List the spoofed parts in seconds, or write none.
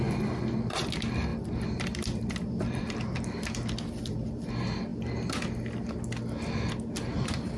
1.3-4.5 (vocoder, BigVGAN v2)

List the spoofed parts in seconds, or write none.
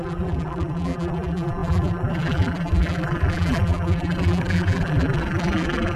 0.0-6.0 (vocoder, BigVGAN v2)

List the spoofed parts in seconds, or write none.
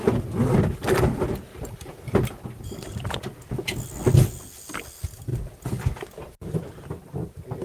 1.5-3.5 (vocoder, BigVGAN v2)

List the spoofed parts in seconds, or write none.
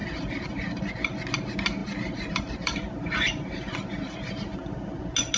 0.0-0.8 (vocoder, BigVGAN v2); 1.8-5.0